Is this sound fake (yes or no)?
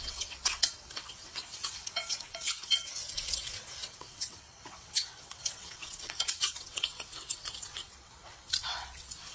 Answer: yes